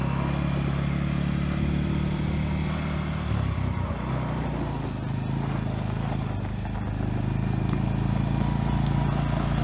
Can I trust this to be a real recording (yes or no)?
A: yes